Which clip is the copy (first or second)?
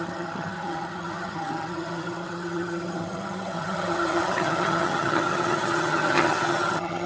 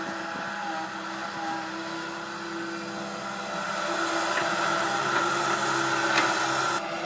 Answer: first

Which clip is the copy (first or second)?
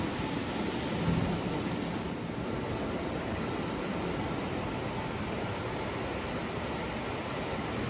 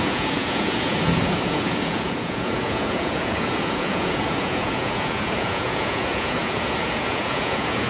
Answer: second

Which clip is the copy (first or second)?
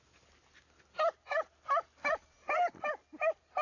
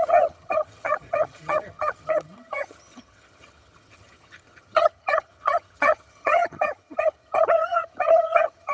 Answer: second